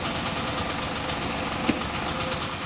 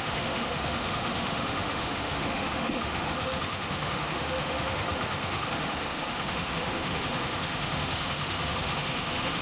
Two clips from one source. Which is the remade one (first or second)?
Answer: second